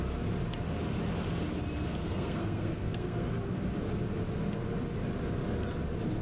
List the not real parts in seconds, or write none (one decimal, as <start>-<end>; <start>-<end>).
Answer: 2.0-3.4